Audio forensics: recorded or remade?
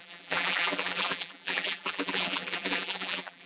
remade